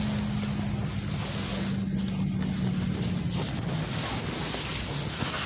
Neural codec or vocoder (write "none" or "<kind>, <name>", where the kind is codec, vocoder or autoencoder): none